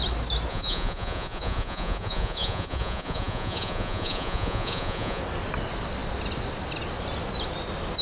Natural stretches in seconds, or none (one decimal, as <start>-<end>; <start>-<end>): 0.0-0.5; 5.2-8.0